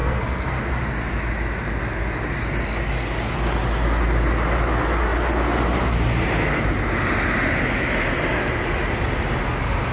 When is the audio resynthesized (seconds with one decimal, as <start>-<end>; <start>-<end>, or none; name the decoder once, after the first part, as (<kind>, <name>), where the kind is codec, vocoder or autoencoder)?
0.0-0.7 (codec, SNAC)